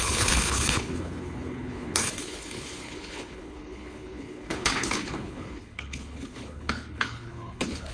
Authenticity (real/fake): fake